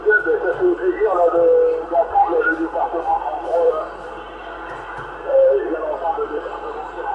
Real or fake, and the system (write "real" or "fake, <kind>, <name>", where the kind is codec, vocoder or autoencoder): real